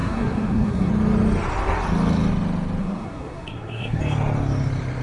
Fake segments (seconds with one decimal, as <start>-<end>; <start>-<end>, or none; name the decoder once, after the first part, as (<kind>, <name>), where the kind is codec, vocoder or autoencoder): 0.0-0.9 (codec, SNAC); 2.8-4.0